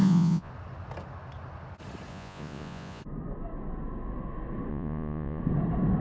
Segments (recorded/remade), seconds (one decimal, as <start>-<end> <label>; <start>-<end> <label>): 0.0-0.5 remade; 0.5-2.1 recorded; 2.1-3.0 remade; 3.0-4.7 recorded; 4.7-5.4 remade; 5.4-6.0 recorded